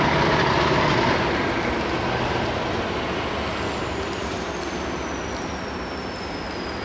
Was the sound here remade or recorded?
recorded